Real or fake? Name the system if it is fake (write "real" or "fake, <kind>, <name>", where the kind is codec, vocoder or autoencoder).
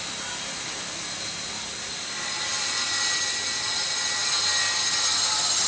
real